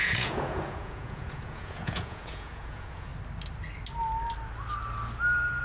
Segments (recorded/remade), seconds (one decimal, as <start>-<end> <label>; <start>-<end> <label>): 0.0-3.1 remade; 3.1-5.6 recorded

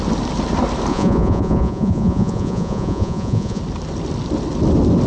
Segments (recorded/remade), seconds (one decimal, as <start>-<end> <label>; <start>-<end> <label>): 0.0-0.9 recorded; 0.9-3.6 remade; 3.6-5.1 recorded

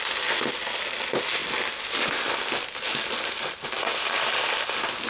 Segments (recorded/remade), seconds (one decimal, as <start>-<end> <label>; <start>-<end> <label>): 0.0-5.1 recorded